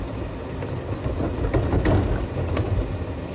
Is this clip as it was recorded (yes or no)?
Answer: yes